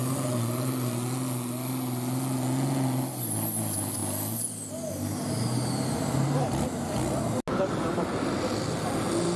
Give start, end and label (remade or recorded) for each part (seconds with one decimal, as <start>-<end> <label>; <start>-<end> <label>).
0.0-9.4 recorded